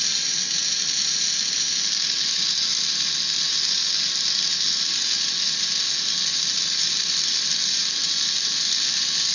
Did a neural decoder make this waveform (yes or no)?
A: no